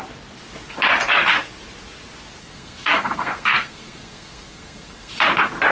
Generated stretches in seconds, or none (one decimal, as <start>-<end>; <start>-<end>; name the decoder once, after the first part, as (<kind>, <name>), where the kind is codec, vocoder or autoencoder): 2.4-5.1 (codec, SNAC)